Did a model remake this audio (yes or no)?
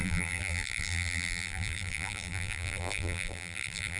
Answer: yes